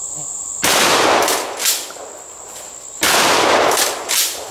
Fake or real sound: real